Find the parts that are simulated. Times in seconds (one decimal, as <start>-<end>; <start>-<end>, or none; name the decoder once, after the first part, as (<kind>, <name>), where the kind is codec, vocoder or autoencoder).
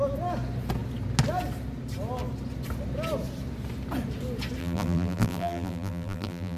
4.6-6.6 (vocoder, BigVGAN v2)